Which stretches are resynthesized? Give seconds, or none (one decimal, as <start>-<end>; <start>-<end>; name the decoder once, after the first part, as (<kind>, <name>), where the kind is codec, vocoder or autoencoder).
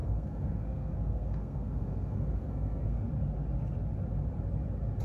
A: 0.0-3.0 (codec, SNAC)